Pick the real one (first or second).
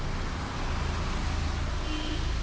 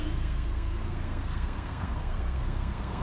first